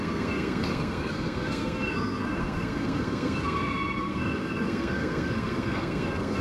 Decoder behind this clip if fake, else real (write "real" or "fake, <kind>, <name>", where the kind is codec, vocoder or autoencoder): fake, codec, SNAC